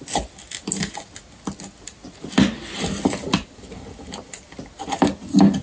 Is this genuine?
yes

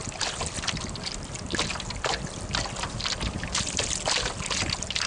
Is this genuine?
yes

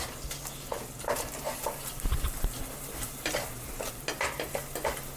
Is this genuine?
yes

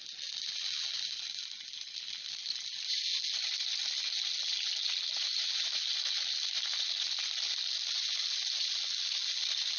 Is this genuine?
yes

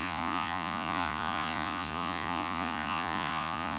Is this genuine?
no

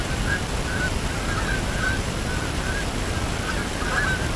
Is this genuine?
yes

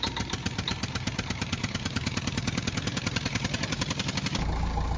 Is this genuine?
no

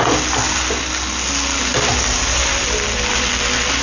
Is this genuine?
yes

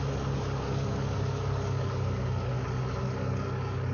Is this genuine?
no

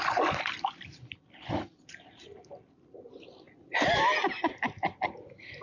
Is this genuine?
no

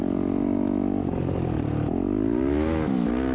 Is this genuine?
yes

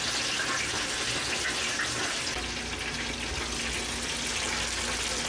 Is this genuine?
yes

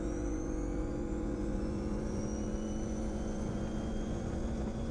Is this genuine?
no